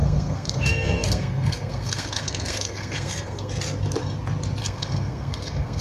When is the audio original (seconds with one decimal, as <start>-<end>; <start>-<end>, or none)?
3.5-4.6